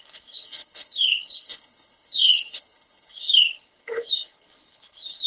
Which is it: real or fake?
fake